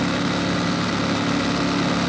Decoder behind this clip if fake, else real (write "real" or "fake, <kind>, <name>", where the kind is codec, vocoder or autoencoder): real